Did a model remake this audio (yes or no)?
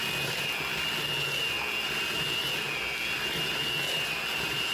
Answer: no